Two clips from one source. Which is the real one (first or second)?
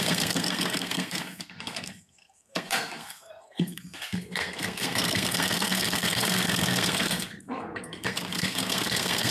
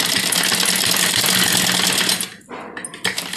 second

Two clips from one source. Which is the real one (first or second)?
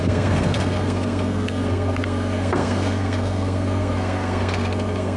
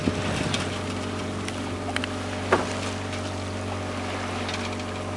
second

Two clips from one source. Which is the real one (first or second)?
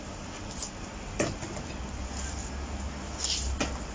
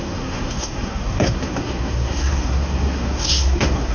first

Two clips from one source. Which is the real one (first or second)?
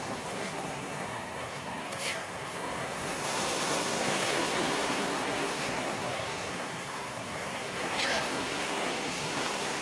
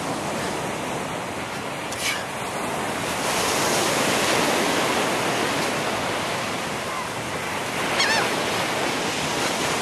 second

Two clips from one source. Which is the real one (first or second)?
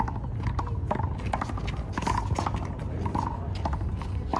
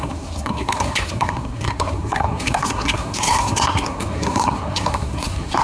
first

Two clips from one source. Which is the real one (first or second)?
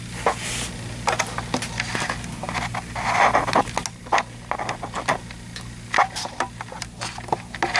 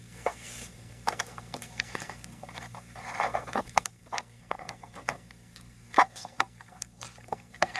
first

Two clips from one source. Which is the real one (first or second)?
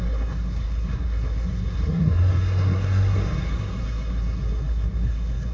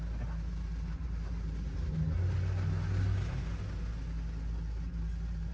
second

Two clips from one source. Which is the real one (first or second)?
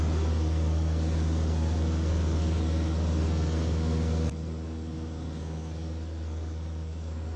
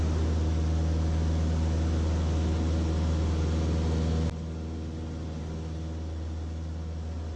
second